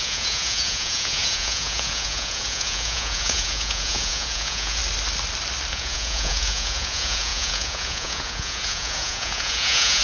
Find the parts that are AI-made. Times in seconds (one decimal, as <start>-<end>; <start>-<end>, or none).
0.0-4.8; 5.7-10.0